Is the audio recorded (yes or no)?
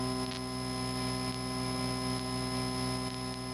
yes